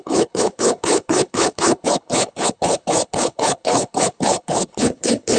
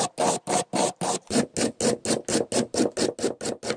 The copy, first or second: first